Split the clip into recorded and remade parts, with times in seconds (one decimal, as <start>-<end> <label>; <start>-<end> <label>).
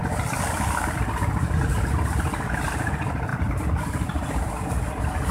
0.0-5.3 recorded